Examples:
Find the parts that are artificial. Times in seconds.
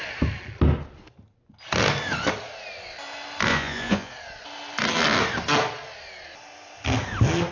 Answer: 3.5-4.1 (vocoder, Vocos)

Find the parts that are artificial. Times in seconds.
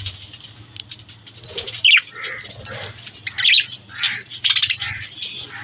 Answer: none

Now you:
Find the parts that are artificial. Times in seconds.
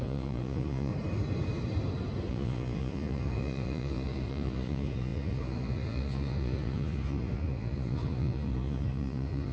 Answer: 0.0-0.9 (vocoder, Vocos); 2.3-9.5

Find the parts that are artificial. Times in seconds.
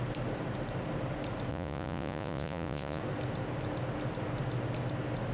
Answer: 1.5-3.0 (vocoder, Vocos)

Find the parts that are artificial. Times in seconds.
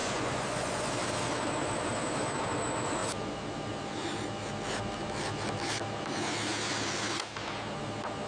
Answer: 0.0-0.9 (vocoder, Vocos)